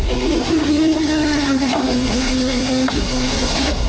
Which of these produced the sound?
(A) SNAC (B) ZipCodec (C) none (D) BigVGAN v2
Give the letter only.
A